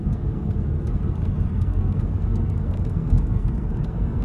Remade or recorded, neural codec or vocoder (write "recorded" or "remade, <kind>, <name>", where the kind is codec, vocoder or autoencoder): remade, codec, SNAC